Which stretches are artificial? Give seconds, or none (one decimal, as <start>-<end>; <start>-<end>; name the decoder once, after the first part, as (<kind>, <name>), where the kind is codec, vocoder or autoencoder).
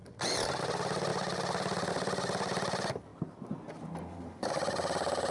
0.6-3.1 (vocoder, BigVGAN v2); 3.8-5.3